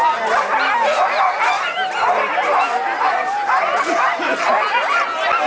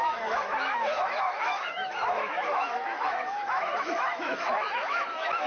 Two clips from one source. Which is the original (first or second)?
first